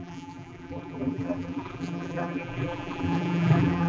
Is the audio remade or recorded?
remade